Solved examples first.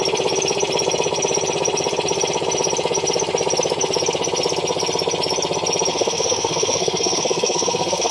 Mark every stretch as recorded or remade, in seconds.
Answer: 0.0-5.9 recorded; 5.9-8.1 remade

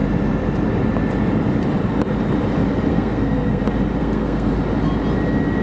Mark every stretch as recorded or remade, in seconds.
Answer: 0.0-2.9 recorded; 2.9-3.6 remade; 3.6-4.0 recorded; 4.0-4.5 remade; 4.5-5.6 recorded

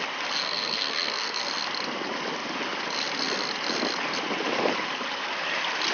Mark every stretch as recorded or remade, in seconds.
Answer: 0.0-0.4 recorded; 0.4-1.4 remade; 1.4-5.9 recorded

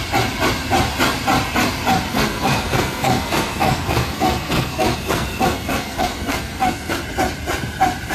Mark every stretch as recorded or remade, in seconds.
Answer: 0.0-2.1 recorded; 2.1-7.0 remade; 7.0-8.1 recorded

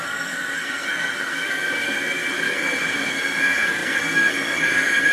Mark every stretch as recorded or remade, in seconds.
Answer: 0.0-5.1 remade

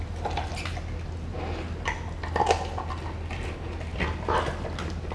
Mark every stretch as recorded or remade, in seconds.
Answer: 0.0-5.1 recorded